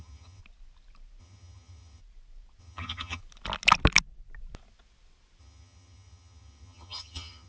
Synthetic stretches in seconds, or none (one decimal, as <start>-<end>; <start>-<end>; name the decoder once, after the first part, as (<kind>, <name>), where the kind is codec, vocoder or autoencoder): 0.0-0.4 (vocoder, HiFi-GAN); 1.2-2.0; 2.6-3.2; 5.4-7.5